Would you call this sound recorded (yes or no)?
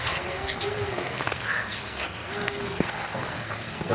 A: no